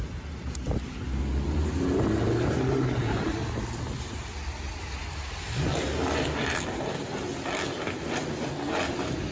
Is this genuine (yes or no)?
yes